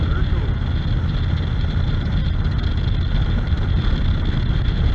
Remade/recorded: recorded